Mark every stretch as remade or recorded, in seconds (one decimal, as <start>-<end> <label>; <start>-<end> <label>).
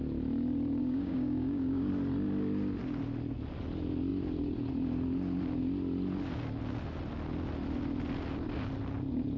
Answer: 0.0-0.8 recorded; 0.8-1.9 remade; 1.9-9.4 recorded